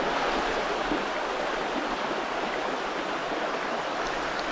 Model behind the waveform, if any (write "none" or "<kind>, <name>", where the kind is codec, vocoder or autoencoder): none